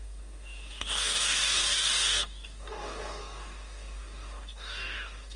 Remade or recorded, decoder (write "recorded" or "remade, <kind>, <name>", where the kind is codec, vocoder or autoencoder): remade, codec, DAC